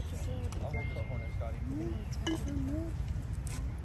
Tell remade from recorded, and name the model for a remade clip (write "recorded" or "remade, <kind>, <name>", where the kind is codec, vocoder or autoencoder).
recorded